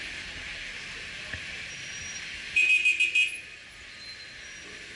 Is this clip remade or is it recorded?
recorded